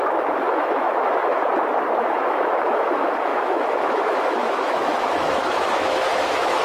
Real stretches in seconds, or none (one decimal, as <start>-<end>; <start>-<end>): 1.5-2.0